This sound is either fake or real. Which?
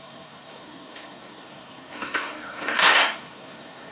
fake